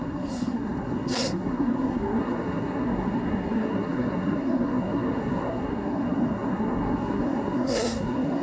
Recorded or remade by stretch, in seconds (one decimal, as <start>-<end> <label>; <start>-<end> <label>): 0.0-8.4 remade